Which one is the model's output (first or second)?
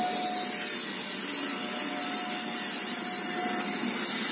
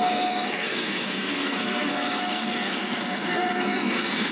second